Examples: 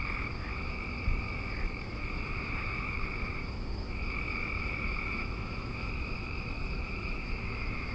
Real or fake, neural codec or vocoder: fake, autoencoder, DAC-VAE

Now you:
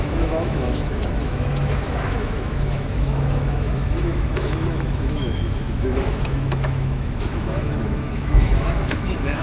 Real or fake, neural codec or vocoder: fake, autoencoder, DAC-VAE